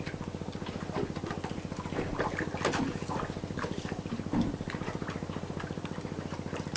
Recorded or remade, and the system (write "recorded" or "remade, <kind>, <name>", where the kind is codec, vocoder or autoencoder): recorded